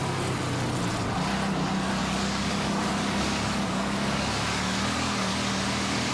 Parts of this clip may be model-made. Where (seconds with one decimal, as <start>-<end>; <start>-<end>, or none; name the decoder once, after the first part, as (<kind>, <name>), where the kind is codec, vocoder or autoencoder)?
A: 2.0-6.1 (codec, DAC)